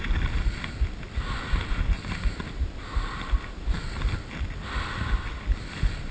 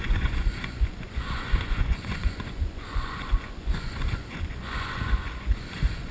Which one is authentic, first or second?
first